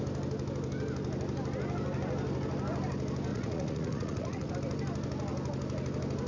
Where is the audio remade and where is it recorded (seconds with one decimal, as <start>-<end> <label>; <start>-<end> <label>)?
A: 0.0-3.3 recorded; 3.3-4.5 remade; 4.5-6.3 recorded